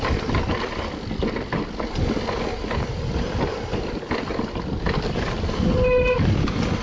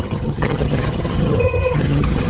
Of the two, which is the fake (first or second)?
second